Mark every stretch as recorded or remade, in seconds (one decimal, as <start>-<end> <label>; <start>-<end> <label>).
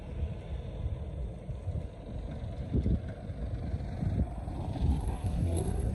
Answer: 0.0-4.9 recorded; 4.9-5.9 remade